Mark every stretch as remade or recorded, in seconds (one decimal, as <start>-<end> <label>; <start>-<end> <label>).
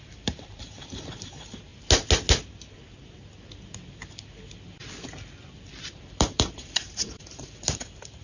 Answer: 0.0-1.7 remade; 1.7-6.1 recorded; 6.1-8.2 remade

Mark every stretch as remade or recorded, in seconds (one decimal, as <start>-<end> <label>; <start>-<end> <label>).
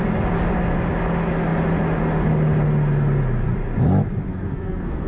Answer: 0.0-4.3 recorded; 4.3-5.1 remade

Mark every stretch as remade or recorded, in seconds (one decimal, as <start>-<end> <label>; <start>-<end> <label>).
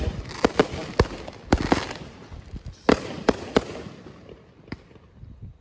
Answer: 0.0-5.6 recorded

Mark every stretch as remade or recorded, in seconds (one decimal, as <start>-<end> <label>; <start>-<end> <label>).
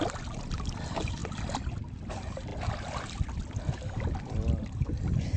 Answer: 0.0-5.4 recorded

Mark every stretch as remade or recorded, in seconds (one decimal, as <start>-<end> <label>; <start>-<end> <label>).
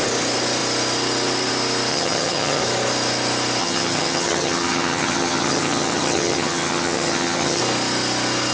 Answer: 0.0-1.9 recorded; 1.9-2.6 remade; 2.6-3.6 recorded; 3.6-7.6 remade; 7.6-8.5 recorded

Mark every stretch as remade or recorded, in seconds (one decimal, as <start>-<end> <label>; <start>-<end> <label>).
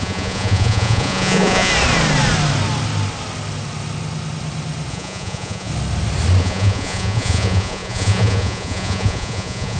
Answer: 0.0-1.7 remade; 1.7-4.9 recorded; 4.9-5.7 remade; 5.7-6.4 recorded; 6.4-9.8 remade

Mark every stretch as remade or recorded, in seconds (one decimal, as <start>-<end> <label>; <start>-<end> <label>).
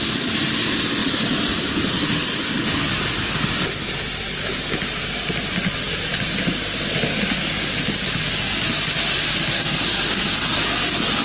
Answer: 0.0-11.2 recorded